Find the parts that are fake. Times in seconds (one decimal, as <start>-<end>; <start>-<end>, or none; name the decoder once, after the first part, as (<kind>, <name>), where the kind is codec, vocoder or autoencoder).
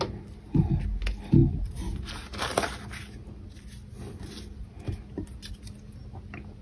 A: none